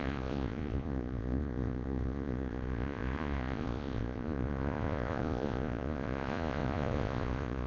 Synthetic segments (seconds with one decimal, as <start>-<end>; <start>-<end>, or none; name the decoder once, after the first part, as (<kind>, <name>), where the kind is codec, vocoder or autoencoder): 0.0-7.7 (vocoder, Vocos)